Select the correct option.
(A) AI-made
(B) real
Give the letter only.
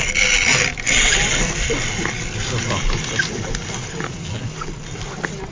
B